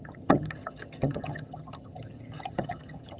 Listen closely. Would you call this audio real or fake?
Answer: fake